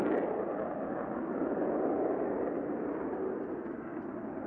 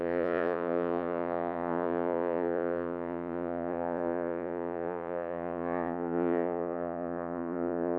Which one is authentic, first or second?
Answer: first